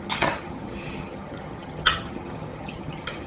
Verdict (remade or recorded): remade